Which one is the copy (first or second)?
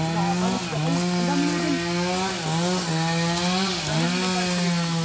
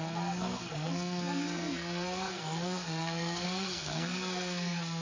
second